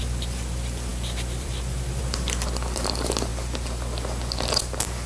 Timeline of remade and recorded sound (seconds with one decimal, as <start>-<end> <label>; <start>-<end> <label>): 0.0-3.3 remade; 3.3-4.5 recorded; 4.5-5.1 remade